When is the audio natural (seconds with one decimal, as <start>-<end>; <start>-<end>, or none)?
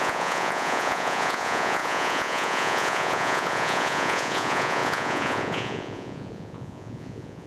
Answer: none